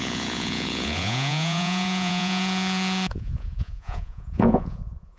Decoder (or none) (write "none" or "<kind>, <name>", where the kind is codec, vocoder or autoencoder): vocoder, Vocos